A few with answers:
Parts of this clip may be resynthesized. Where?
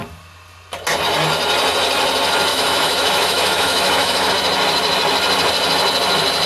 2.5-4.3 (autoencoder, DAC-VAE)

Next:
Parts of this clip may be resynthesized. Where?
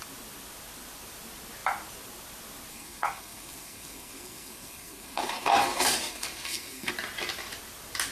2.7-6.9 (codec, SNAC)